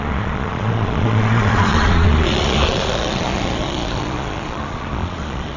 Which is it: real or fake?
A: fake